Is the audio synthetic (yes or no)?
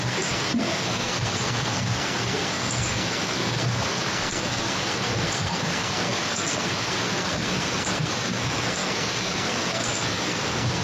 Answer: yes